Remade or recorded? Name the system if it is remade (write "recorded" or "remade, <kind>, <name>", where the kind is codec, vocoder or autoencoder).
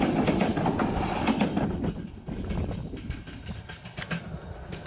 remade, vocoder, BigVGAN v2